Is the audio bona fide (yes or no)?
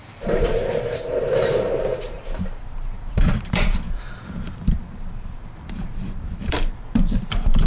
no